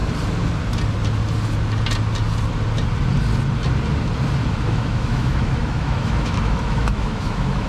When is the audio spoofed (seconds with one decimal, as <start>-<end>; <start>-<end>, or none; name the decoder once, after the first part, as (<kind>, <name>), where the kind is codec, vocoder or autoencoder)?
4.6-7.7 (autoencoder, DAC-VAE)